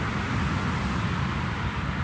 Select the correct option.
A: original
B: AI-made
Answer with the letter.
A